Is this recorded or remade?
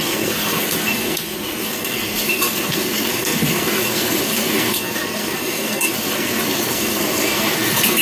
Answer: remade